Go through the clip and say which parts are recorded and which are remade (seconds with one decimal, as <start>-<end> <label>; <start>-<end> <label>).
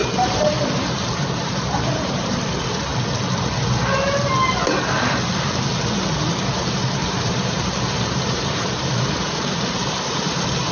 0.0-2.9 remade; 2.9-6.3 recorded; 6.3-10.7 remade